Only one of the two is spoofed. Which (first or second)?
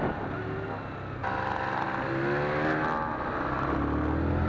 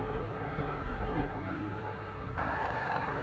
second